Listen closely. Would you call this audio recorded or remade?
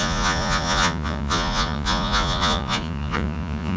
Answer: remade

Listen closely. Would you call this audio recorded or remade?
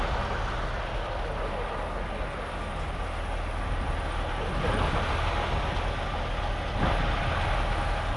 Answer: recorded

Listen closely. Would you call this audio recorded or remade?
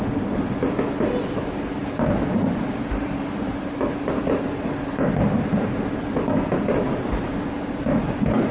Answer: recorded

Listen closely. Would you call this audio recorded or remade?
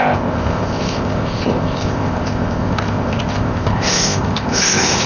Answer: remade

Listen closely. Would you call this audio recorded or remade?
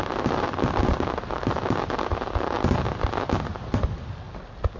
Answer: recorded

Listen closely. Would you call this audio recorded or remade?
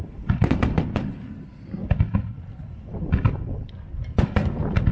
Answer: recorded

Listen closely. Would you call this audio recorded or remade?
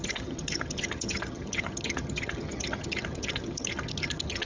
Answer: remade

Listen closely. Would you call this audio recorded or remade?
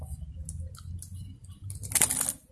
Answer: recorded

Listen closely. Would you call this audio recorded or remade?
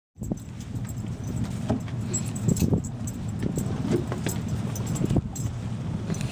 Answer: recorded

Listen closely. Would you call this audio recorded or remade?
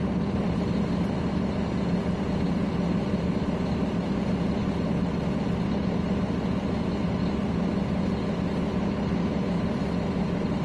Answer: recorded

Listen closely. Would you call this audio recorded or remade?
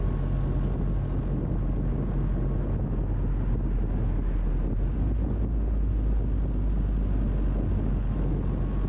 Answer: recorded